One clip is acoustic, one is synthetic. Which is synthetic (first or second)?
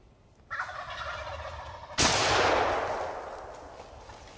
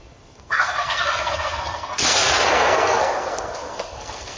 second